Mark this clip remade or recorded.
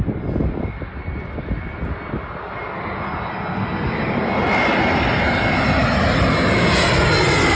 recorded